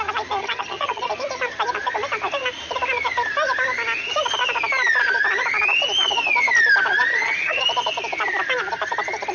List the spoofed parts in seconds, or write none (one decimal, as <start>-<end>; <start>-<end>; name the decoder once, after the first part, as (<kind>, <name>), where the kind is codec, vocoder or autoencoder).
0.4-1.1 (vocoder, HiFi-GAN); 7.1-7.6